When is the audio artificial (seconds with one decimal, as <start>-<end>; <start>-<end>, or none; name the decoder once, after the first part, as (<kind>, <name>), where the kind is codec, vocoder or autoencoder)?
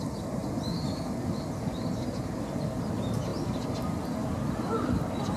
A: 3.3-4.3 (vocoder, BigVGAN v2)